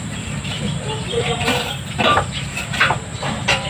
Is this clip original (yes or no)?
no